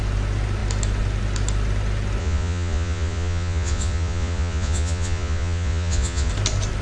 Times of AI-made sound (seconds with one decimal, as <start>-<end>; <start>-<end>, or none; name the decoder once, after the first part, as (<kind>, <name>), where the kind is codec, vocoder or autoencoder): 2.2-6.3 (vocoder, Vocos)